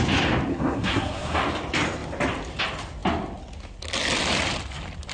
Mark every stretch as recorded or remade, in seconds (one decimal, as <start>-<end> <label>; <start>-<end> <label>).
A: 0.0-0.5 recorded; 0.5-1.4 remade; 1.4-5.1 recorded